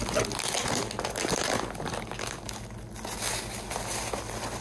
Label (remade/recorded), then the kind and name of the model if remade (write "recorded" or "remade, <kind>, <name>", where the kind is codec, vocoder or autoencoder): recorded